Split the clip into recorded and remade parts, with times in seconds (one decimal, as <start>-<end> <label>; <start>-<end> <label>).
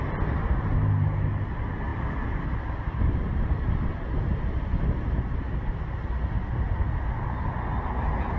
0.0-8.4 recorded